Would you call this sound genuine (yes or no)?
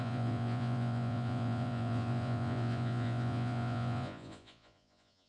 no